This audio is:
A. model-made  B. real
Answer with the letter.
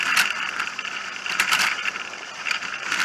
A